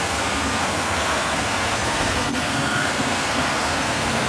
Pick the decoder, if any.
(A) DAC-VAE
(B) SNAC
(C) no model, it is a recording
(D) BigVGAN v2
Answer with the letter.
B